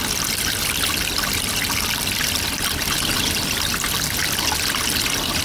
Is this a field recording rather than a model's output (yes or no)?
yes